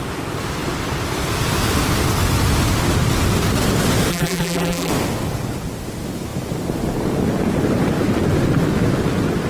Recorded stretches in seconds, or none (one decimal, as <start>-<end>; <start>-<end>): 0.0-4.1; 4.9-9.5